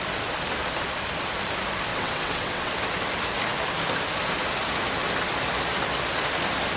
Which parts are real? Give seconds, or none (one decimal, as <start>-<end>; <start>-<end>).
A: 0.0-1.9; 2.7-6.8

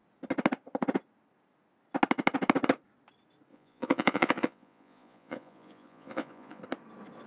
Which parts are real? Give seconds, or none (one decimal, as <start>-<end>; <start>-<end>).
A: 0.0-3.5; 6.6-7.3

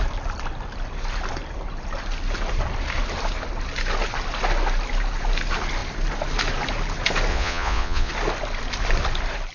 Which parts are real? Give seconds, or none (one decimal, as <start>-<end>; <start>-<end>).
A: 0.0-7.3; 8.1-9.5

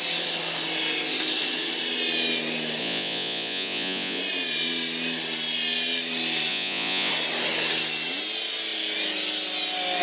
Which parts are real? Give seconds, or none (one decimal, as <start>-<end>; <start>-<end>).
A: 0.0-2.8; 4.2-6.5; 7.1-10.0

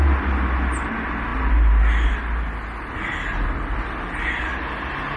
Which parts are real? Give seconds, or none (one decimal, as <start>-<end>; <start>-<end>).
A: 0.0-5.2

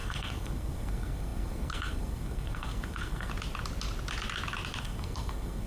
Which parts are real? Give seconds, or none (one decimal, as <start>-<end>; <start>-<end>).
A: 3.3-4.8

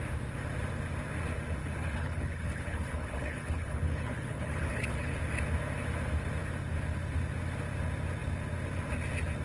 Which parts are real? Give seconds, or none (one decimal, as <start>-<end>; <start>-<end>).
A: 0.0-1.6; 5.2-9.4

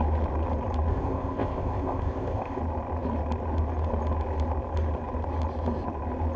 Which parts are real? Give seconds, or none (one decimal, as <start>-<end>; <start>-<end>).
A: 0.0-0.9; 2.6-6.4